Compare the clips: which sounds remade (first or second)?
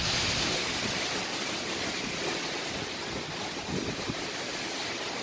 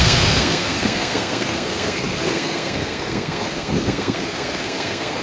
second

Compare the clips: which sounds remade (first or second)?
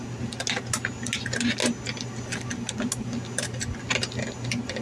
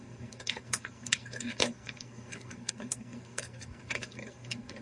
second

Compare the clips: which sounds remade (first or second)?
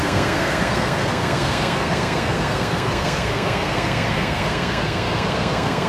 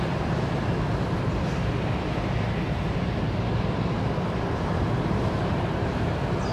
first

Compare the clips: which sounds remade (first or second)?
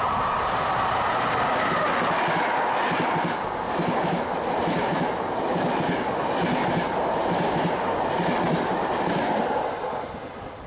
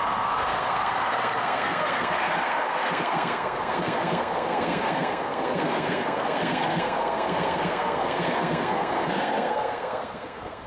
second